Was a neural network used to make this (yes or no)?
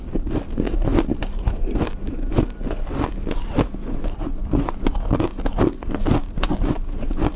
no